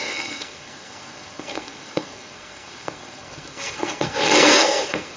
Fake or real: fake